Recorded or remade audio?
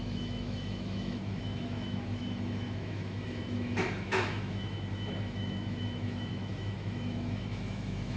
remade